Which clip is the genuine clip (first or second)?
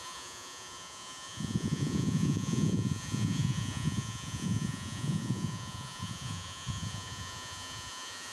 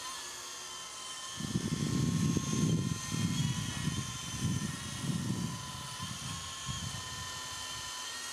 second